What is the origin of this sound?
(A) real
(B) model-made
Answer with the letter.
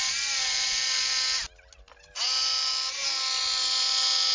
A